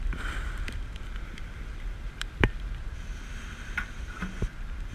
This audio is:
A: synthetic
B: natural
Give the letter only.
A